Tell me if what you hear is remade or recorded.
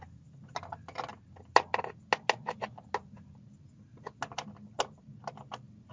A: recorded